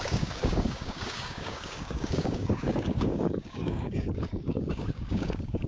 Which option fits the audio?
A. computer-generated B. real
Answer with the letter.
A